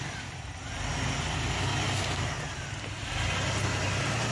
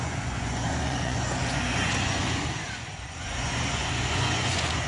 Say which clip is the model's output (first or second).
second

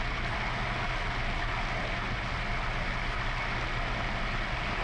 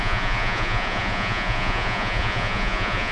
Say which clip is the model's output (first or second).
second